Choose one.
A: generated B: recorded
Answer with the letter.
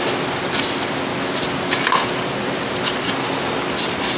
B